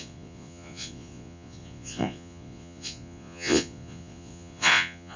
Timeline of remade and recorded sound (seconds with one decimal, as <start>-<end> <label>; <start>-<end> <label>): 0.0-5.2 remade